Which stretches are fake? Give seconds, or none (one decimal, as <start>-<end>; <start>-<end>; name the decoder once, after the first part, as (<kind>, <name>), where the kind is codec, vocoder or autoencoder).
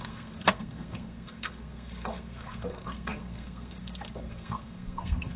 0.0-5.4 (codec, SNAC)